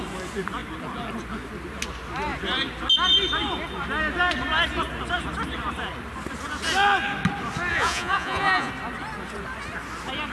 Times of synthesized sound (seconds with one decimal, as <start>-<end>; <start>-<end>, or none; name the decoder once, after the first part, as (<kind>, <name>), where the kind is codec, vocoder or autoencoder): 7.7-8.7 (vocoder, Vocos)